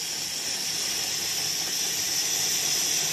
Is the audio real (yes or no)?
yes